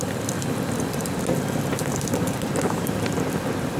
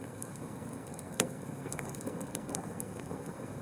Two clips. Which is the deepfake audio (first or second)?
second